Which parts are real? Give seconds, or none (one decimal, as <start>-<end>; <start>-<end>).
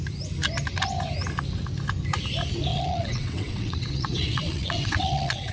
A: 0.0-2.7